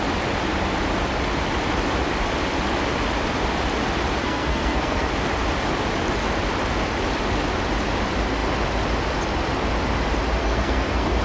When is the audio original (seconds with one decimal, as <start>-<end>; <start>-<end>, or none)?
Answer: 0.0-4.2; 5.1-10.4